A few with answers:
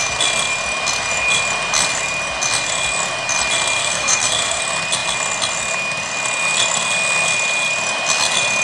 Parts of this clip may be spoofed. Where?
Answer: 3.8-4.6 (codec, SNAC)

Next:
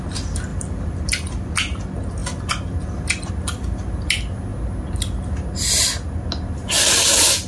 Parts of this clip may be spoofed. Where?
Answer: 0.5-1.5 (vocoder, BigVGAN v2)

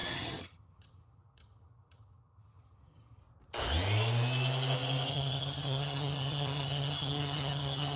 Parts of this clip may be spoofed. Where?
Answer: 0.0-3.2 (vocoder, HiFi-GAN); 5.1-8.0

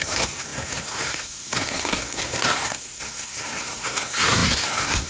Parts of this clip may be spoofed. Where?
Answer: 0.0-5.1 (codec, SNAC)

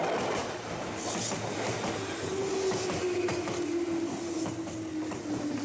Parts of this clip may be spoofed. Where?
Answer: none

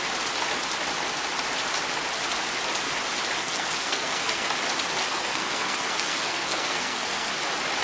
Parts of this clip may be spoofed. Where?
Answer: 3.4-4.5 (codec, SNAC); 5.0-7.3

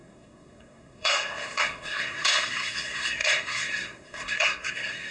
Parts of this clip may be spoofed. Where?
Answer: 0.0-5.1 (codec, SNAC)